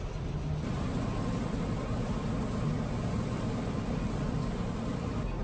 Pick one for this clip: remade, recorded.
recorded